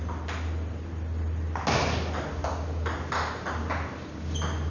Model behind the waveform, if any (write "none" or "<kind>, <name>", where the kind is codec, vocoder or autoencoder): none